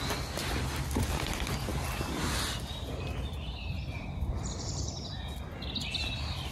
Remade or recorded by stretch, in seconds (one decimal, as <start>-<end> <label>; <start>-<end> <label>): 0.0-6.5 recorded